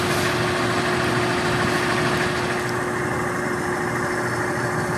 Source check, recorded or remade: recorded